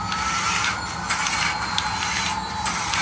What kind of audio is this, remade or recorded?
recorded